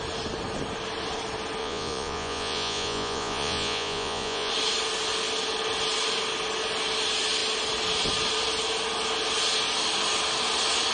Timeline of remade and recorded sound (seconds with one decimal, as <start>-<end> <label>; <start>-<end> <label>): 0.0-1.6 recorded; 1.6-4.5 remade; 4.5-10.9 recorded